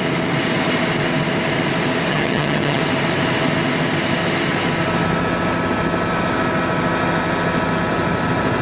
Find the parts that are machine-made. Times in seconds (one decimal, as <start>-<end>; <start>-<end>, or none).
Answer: 2.1-2.8